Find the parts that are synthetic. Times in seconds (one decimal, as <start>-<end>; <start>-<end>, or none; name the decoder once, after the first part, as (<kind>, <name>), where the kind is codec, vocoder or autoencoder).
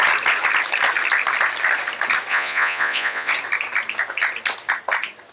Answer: 2.3-3.3 (vocoder, Vocos)